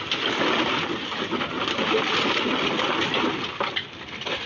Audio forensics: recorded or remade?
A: recorded